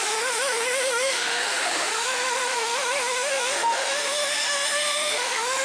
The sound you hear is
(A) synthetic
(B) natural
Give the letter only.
A